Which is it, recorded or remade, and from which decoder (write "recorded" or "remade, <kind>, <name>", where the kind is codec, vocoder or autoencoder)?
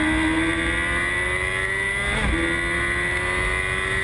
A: recorded